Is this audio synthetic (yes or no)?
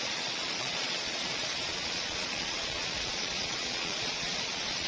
yes